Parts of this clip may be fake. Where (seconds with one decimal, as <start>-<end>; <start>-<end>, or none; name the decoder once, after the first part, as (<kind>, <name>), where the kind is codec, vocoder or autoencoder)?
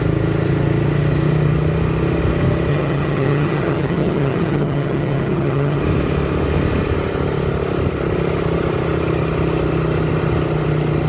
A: 2.7-5.8 (vocoder, HiFi-GAN)